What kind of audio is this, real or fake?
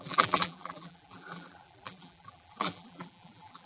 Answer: fake